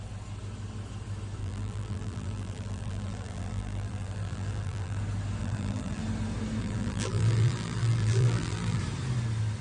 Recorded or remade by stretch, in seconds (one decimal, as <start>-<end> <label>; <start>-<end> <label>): 0.0-1.4 recorded; 1.4-5.0 remade; 5.0-5.4 recorded; 5.4-6.0 remade; 6.0-6.6 recorded; 6.6-8.8 remade; 8.8-9.6 recorded